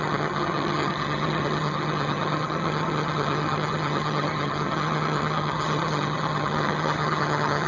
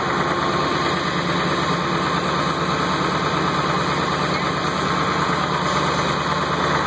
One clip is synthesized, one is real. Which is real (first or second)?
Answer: second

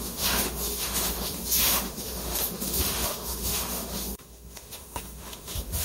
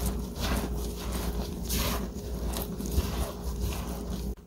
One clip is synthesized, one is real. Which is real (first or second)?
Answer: second